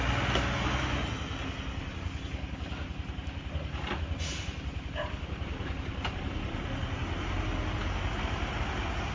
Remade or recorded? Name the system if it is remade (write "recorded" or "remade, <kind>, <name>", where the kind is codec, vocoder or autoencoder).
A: recorded